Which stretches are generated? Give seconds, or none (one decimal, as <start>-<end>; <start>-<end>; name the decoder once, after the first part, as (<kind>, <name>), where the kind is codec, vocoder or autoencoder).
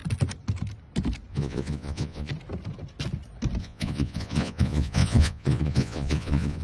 1.3-2.3 (vocoder, Vocos); 3.6-6.6